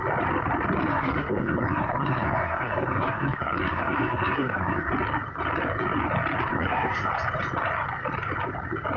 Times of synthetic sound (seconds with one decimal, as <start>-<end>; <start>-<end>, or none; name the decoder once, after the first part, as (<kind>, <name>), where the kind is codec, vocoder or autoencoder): 0.9-4.9 (codec, SNAC); 6.5-7.1